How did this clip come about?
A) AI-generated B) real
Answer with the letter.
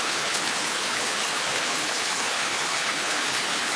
A